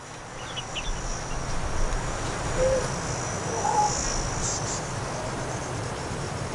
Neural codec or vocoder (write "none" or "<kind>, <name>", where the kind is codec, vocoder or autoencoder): none